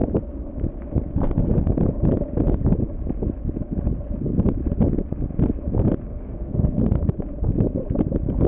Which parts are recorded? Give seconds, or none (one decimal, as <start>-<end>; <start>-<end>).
0.0-6.1; 6.8-8.5